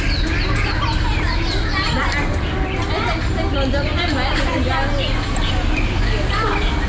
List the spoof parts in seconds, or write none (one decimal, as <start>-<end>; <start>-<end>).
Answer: none